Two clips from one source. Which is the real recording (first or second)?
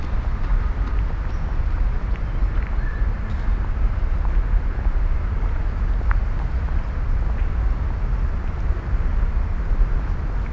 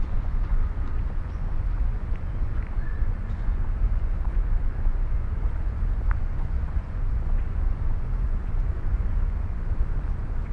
first